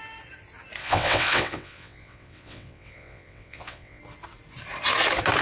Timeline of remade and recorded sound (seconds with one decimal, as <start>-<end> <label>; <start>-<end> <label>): 0.0-0.8 recorded; 0.8-4.0 remade; 4.0-5.4 recorded